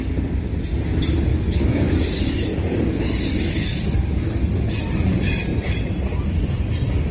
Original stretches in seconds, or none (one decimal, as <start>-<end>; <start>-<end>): 0.0-1.3; 4.7-7.1